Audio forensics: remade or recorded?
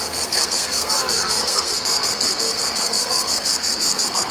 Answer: remade